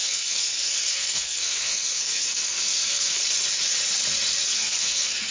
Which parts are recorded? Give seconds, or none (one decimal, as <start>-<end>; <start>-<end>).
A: 3.2-4.5